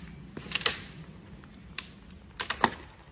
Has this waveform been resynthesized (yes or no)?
no